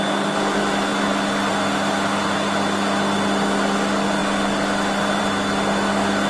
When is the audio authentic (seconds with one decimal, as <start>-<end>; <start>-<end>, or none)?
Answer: 0.0-6.3